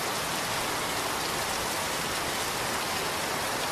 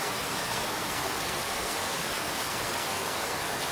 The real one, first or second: first